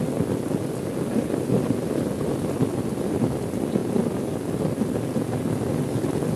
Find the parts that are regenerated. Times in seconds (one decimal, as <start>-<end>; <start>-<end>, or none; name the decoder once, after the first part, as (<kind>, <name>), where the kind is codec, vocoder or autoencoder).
none